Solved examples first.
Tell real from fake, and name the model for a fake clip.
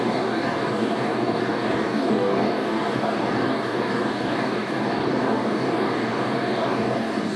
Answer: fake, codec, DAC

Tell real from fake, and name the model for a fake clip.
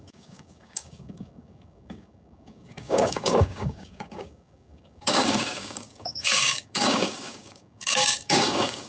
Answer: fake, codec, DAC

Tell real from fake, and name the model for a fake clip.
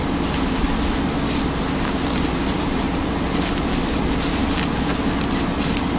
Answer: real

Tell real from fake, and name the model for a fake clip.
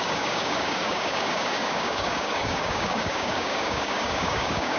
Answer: fake, codec, DAC